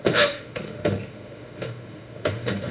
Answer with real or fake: fake